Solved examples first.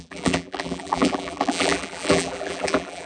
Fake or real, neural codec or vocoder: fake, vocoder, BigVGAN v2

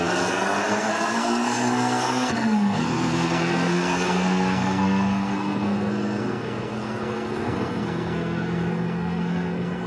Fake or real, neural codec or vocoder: fake, codec, SNAC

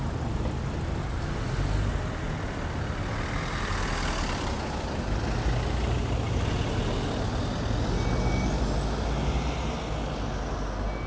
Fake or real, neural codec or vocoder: real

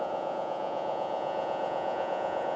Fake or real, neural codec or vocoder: fake, vocoder, Vocos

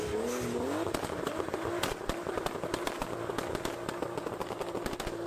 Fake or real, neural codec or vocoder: real